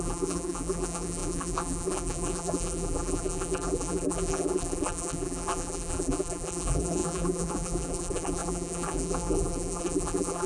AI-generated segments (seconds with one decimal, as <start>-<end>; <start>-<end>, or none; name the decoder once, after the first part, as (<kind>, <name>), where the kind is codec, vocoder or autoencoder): 0.0-10.5 (vocoder, BigVGAN v2)